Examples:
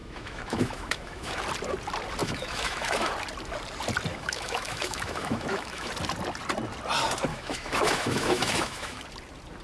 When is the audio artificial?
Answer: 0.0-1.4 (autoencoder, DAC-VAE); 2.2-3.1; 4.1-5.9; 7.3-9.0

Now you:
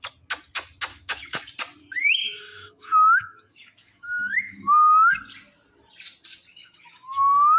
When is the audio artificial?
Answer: 0.9-1.4 (autoencoder, DAC-VAE); 1.8-5.1; 6.5-7.6

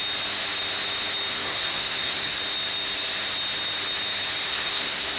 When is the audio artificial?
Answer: 1.3-2.4 (codec, SNAC); 4.5-5.2

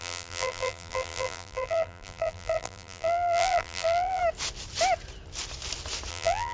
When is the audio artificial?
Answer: 0.0-4.2 (vocoder, BigVGAN v2); 6.1-6.5

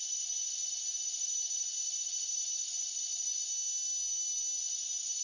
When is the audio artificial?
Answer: 0.0-3.5 (vocoder, Vocos); 4.6-5.2

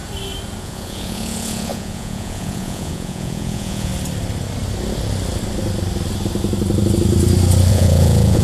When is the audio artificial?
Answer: 0.6-3.9 (vocoder, Vocos); 7.7-8.4

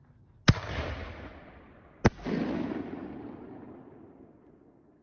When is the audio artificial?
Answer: none